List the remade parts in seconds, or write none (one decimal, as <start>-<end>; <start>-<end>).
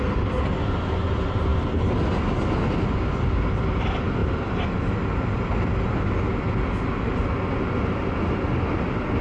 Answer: none